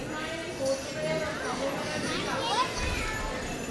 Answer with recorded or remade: recorded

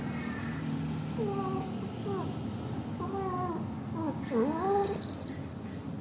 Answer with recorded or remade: remade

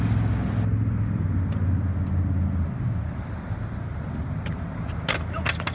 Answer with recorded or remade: recorded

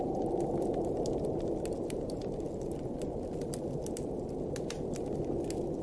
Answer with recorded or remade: recorded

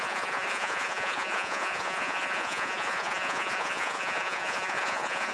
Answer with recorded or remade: remade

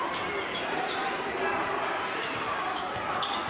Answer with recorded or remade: remade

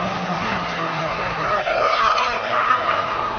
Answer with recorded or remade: remade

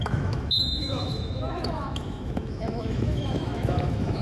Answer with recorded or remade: remade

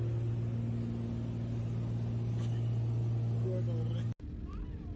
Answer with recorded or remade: recorded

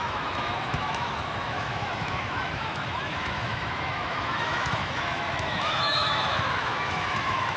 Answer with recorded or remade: remade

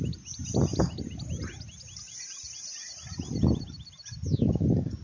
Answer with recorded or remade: recorded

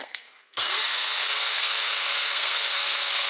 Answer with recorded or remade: remade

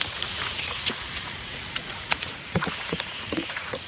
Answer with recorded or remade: remade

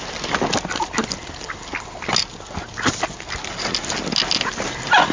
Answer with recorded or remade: recorded